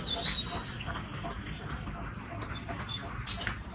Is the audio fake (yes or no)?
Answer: no